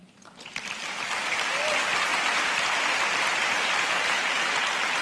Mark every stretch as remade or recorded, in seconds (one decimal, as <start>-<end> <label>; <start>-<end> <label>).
0.0-5.0 recorded